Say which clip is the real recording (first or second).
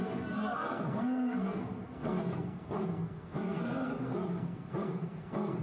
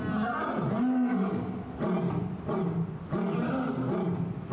second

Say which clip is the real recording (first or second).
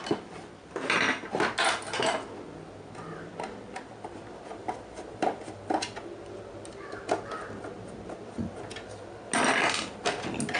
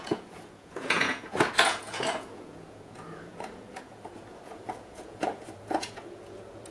first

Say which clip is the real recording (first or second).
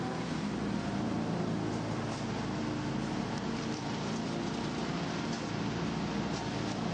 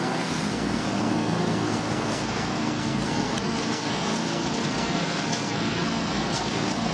first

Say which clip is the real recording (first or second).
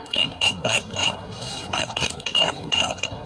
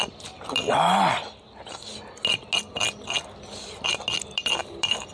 second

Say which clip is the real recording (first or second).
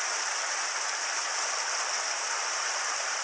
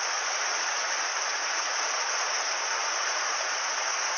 first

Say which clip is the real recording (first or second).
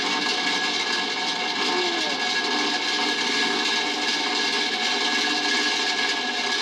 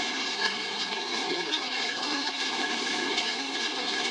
first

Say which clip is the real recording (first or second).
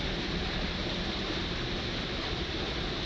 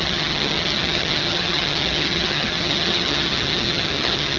first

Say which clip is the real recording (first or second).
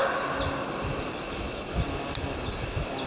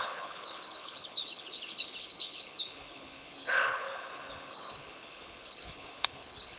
first